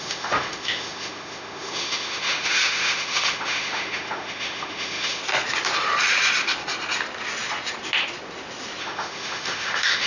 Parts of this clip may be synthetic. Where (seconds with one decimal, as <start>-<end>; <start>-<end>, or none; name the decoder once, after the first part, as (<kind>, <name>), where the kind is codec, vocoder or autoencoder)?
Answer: 0.0-5.2 (autoencoder, DAC-VAE); 8.8-10.1